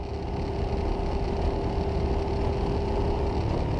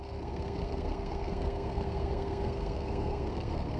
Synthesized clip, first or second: second